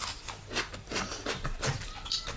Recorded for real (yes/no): yes